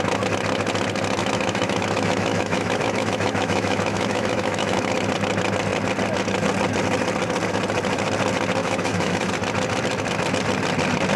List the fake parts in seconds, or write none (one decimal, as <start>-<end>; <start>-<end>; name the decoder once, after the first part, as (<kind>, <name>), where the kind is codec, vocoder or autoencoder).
1.2-4.9 (autoencoder, DAC-VAE); 8.6-9.3